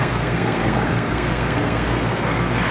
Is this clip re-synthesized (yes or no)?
yes